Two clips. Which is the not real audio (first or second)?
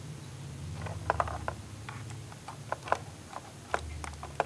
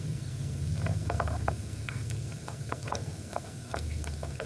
second